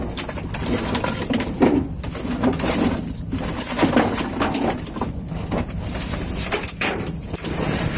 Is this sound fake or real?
real